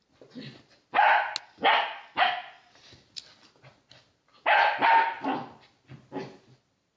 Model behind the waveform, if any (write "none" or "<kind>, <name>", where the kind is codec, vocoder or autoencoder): none